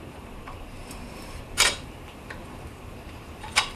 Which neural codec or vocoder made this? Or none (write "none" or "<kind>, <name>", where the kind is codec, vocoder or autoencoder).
vocoder, BigVGAN v2